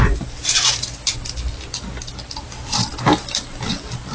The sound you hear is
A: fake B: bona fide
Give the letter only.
B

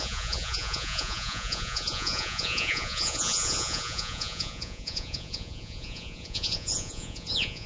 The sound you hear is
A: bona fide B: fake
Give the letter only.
B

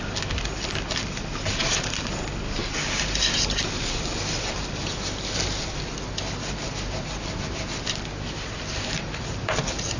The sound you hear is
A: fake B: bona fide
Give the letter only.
B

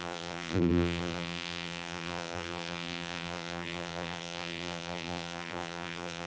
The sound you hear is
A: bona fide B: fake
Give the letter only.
B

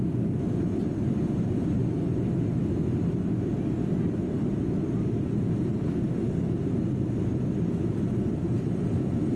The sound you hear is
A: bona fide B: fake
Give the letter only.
A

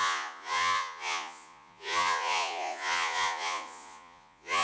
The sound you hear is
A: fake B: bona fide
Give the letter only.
A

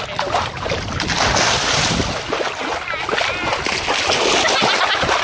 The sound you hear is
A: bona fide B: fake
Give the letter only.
A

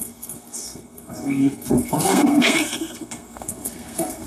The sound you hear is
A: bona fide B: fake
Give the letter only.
B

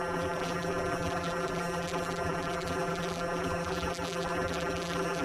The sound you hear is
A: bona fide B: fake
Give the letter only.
B